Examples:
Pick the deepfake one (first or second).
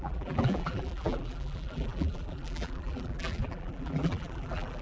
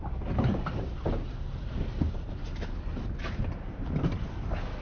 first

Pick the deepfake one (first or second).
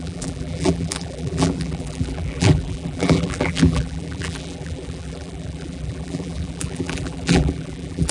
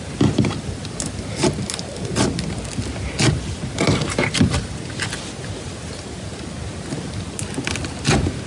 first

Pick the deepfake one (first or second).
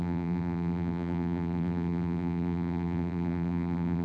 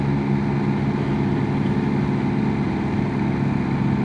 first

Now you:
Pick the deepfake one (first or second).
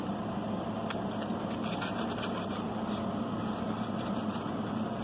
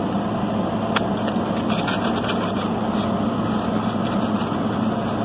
first